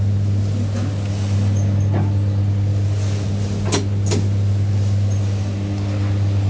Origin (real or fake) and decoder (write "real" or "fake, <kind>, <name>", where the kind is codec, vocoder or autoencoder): real